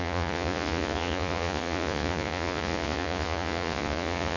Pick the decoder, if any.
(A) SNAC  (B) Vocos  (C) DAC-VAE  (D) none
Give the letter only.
B